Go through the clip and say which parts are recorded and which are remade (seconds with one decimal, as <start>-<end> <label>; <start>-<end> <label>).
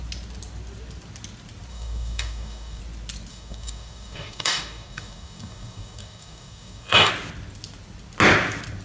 0.0-1.7 recorded; 1.7-2.8 remade; 2.8-3.3 recorded; 3.3-7.1 remade; 7.1-8.8 recorded